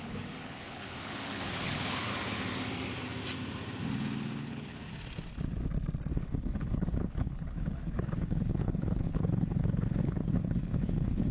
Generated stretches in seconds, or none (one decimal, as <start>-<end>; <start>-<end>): 0.0-2.1; 4.4-4.9; 6.1-11.3